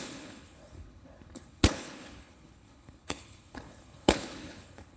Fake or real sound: fake